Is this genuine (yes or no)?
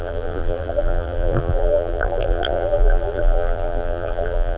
no